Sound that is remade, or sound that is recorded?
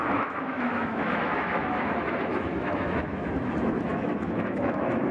remade